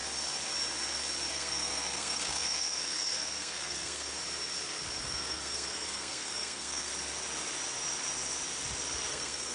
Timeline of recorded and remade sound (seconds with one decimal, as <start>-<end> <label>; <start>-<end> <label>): 0.0-1.3 recorded; 1.3-4.2 remade; 4.2-5.0 recorded; 5.0-6.9 remade; 6.9-9.1 recorded; 9.1-9.5 remade